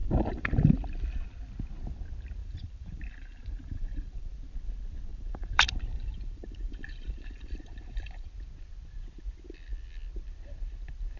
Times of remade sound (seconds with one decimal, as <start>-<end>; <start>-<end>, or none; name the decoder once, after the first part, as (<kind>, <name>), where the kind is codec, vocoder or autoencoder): 0.0-0.7 (vocoder, BigVGAN v2); 2.4-4.3; 5.1-8.3

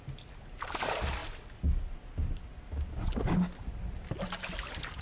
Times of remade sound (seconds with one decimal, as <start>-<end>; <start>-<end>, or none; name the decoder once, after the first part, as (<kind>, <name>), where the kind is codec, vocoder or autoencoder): none